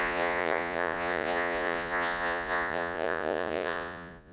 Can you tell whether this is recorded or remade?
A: remade